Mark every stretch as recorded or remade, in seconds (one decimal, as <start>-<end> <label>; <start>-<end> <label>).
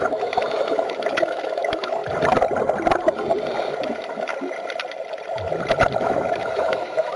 0.0-2.0 remade; 2.0-3.9 recorded; 3.9-4.3 remade; 4.3-6.0 recorded; 6.0-7.2 remade